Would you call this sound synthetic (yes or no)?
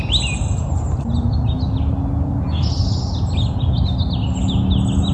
no